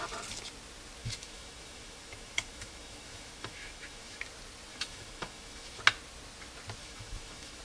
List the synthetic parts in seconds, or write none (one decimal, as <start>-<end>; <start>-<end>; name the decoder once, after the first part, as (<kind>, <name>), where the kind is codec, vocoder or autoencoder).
1.0-4.2 (autoencoder, DAC-VAE); 4.7-5.8; 6.8-7.6